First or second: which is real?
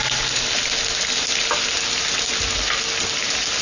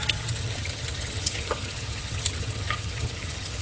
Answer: first